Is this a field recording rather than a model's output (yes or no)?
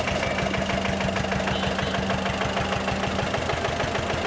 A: yes